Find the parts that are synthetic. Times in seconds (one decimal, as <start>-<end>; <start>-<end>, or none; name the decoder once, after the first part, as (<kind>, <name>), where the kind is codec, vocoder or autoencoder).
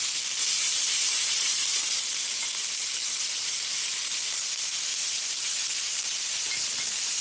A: 0.7-4.4 (vocoder, BigVGAN v2); 4.9-7.2